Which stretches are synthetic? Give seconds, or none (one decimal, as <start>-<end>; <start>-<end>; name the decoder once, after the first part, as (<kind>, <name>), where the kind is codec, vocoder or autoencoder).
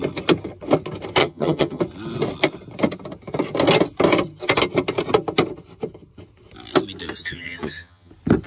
1.2-1.8 (vocoder, HiFi-GAN); 7.2-8.1